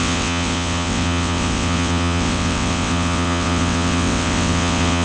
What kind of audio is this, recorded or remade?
remade